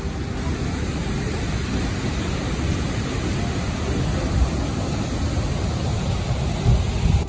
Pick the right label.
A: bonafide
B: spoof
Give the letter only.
A